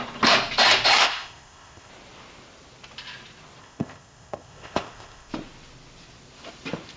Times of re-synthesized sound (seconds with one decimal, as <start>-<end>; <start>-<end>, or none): 1.0-1.9; 3.6-5.3